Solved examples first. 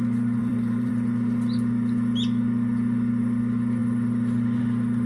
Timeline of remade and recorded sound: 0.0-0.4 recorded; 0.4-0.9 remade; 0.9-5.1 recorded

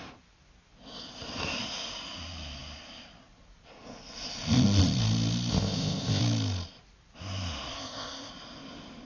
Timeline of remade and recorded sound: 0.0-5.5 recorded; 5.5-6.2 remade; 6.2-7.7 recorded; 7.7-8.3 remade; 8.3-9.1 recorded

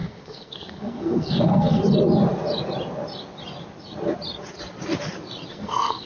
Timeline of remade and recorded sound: 0.0-1.8 remade; 1.8-5.5 recorded; 5.5-6.1 remade